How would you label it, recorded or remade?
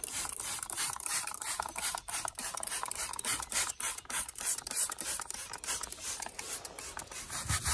remade